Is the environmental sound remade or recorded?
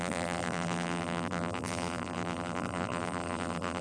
remade